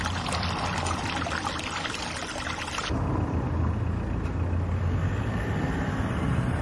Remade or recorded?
recorded